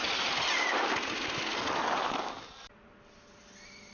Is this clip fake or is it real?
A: real